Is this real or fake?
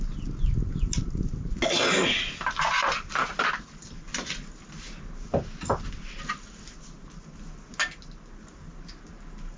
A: real